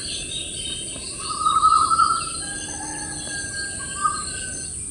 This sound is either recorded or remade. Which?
recorded